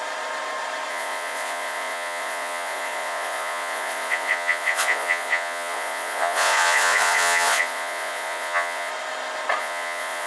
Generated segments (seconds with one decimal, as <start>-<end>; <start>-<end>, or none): 0.9-8.9; 9.6-10.3